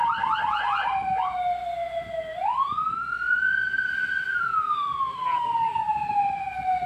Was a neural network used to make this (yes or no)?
no